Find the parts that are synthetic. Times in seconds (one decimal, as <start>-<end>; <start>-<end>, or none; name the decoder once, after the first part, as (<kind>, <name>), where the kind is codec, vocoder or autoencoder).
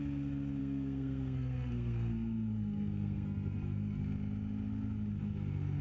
0.6-4.0 (codec, SNAC)